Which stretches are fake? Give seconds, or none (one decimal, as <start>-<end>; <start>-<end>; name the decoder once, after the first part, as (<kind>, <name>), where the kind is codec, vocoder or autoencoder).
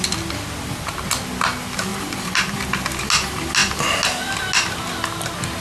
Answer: none